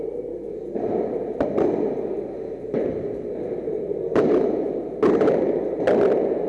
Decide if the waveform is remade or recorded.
recorded